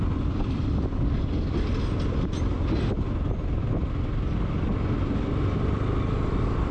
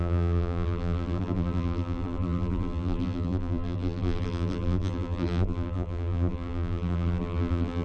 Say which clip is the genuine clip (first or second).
first